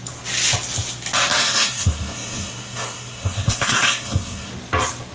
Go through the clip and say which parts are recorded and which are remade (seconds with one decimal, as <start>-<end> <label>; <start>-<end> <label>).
0.0-1.4 recorded; 1.4-4.5 remade; 4.5-5.1 recorded